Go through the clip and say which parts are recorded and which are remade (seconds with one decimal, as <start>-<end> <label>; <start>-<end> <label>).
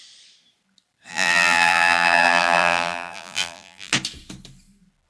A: 0.0-1.1 recorded; 1.1-3.9 remade; 3.9-5.1 recorded